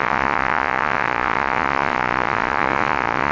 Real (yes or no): no